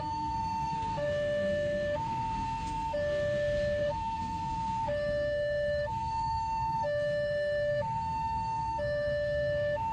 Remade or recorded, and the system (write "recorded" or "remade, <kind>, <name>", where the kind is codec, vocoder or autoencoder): remade, codec, SNAC